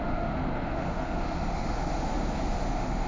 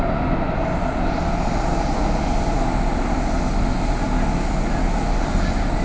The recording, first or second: second